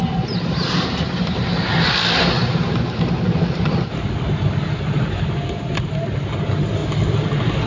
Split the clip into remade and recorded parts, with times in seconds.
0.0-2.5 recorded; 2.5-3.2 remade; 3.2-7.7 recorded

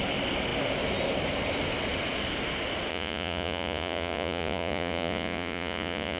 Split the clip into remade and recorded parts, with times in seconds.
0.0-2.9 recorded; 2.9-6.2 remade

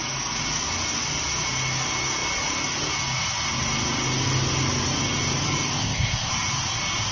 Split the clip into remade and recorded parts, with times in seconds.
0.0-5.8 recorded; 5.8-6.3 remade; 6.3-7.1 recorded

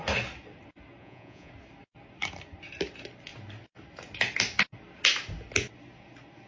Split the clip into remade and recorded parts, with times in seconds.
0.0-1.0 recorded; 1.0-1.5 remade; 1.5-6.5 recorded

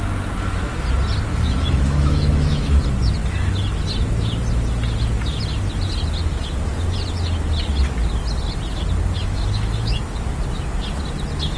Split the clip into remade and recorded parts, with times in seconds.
0.0-1.3 recorded; 1.3-2.8 remade; 2.8-9.2 recorded; 9.2-10.0 remade; 10.0-11.6 recorded

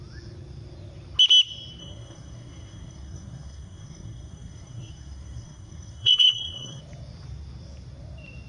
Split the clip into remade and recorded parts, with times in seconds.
0.0-1.8 recorded; 1.8-6.8 remade; 6.8-8.5 recorded

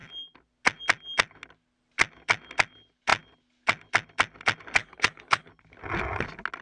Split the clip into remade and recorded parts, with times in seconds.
0.0-4.8 recorded; 4.8-5.5 remade; 5.5-6.6 recorded

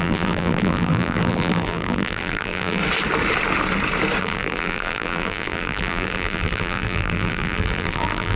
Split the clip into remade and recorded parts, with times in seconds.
0.0-2.8 remade; 2.8-4.2 recorded; 4.2-8.4 remade